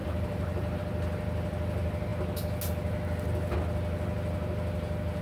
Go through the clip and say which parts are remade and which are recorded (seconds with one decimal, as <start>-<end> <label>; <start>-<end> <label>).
0.0-0.8 remade; 0.8-5.2 recorded